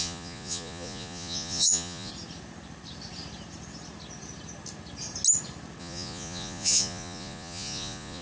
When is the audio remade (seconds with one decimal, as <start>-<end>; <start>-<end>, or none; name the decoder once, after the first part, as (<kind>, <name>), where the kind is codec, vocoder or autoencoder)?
0.0-2.1 (vocoder, Vocos); 5.8-8.2